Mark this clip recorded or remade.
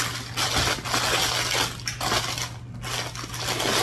recorded